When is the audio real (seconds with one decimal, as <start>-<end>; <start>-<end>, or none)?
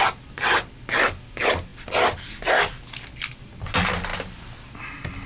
0.0-5.3